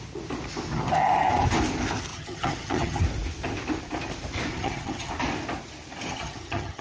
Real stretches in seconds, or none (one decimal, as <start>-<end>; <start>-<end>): 0.0-2.1; 3.0-4.5; 5.1-6.1